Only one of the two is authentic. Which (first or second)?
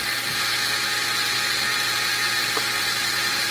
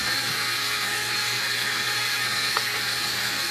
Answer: first